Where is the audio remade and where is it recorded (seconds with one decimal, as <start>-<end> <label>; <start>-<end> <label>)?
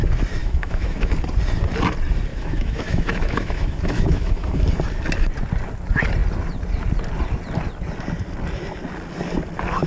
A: 0.0-0.4 recorded; 0.4-1.1 remade; 1.1-2.3 recorded; 2.3-4.6 remade; 4.6-9.9 recorded